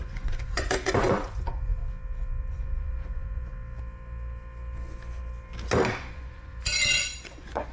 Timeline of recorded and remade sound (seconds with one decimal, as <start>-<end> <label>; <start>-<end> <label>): 0.0-1.8 remade; 1.8-2.5 recorded; 2.5-3.5 remade; 3.5-5.9 recorded; 5.9-7.7 remade